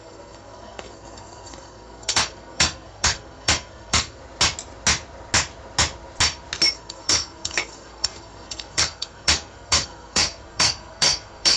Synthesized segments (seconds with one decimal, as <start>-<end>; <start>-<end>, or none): 0.0-4.2; 6.7-11.6